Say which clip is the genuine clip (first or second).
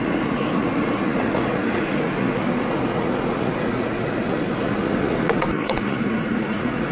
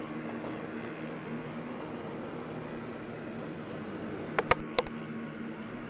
second